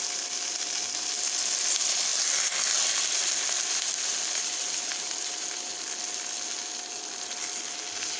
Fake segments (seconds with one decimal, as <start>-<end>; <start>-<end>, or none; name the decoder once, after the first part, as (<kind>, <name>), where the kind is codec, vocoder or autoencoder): none